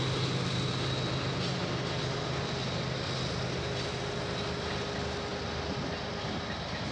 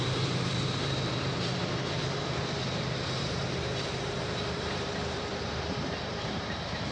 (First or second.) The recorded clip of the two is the first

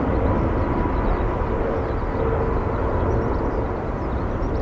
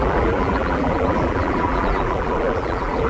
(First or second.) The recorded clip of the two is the first